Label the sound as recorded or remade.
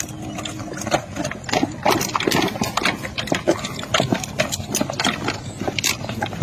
recorded